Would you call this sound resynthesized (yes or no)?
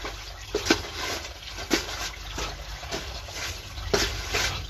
no